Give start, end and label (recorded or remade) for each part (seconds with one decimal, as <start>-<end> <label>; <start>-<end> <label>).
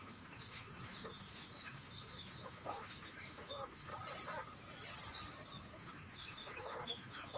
0.0-3.9 remade; 3.9-5.7 recorded; 5.7-7.4 remade